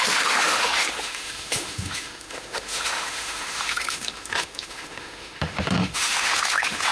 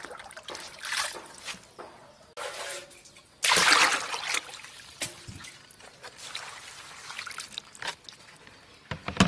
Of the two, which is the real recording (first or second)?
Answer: second